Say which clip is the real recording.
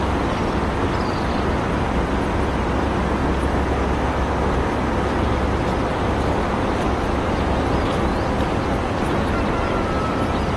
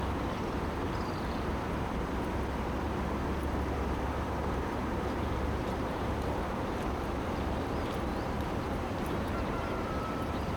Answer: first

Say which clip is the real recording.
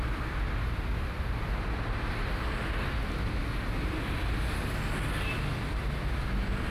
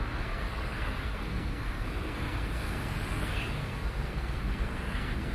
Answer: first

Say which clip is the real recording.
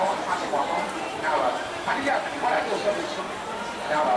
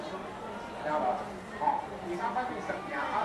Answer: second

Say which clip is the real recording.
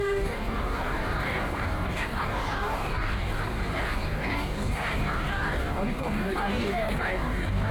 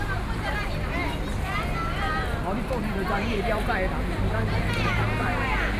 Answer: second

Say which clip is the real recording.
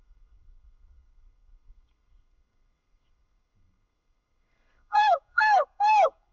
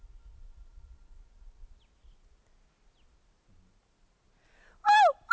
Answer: second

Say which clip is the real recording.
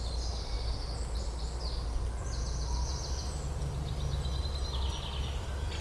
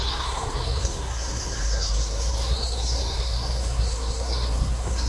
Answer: first